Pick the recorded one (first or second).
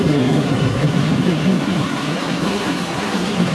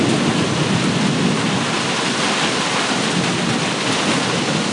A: second